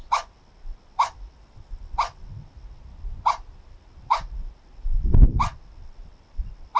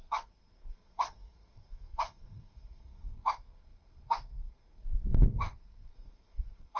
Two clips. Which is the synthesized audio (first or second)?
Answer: second